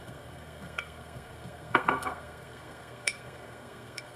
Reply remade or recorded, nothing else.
remade